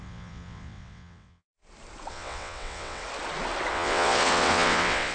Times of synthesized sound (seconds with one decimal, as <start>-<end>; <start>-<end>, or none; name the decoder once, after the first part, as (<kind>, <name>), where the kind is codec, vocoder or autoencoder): 0.0-1.6 (vocoder, WaveNeXt); 2.1-3.0; 3.7-5.1